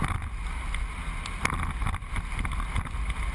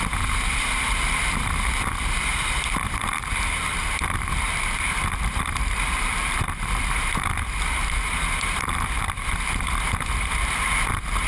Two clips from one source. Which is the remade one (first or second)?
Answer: second